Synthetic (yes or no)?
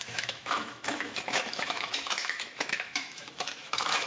yes